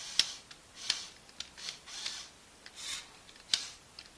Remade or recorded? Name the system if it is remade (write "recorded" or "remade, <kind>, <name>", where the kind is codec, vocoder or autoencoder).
recorded